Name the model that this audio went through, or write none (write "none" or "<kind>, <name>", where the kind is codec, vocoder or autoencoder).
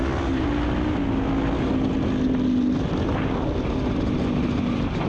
none